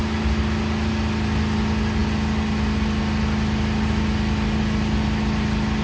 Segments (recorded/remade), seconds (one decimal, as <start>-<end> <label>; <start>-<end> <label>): 0.0-5.8 recorded